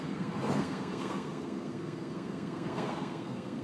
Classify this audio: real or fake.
fake